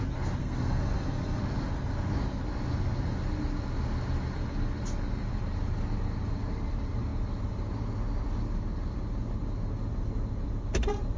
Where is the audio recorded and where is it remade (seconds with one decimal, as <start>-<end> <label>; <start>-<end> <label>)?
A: 0.0-0.4 recorded; 0.4-1.4 remade; 1.4-11.2 recorded